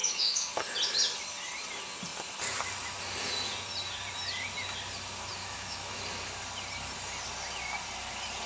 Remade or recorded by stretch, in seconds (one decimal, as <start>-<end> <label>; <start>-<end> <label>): 0.0-0.5 remade; 0.5-5.4 recorded; 5.4-6.0 remade; 6.0-8.5 recorded